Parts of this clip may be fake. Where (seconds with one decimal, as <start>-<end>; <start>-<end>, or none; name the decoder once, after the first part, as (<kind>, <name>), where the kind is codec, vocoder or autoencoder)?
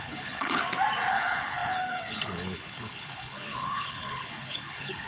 0.0-0.6 (codec, HILCodec); 1.1-5.1